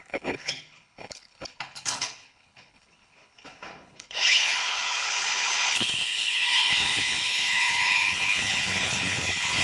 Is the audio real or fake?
fake